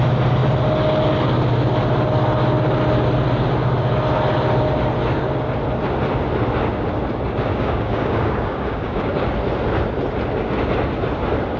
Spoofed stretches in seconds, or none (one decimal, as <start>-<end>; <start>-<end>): 7.5-9.2